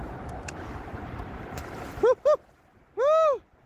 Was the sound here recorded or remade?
recorded